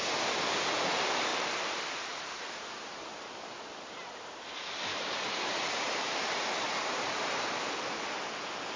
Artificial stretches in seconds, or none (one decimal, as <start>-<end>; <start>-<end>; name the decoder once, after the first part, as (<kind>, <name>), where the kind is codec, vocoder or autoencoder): 1.3-4.4 (vocoder, BigVGAN v2); 4.9-6.5